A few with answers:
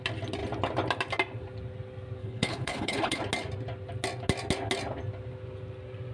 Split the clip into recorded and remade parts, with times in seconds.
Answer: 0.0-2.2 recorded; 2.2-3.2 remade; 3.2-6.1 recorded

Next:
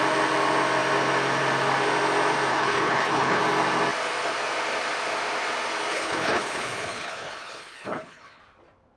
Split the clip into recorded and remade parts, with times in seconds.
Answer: 0.0-2.5 recorded; 2.5-3.4 remade; 3.4-5.9 recorded; 5.9-8.4 remade; 8.4-9.0 recorded

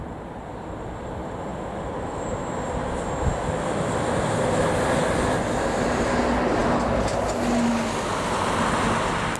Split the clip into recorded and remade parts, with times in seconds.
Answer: 0.0-9.4 recorded

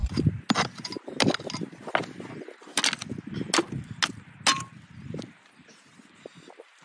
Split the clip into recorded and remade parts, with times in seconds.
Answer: 0.0-6.8 recorded

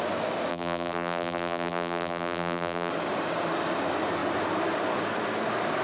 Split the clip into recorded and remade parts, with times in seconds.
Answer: 0.0-0.5 recorded; 0.5-2.9 remade; 2.9-5.8 recorded

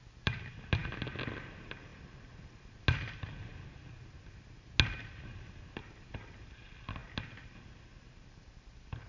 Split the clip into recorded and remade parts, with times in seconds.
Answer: 0.0-9.1 recorded